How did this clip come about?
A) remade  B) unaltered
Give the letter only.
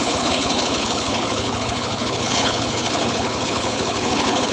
A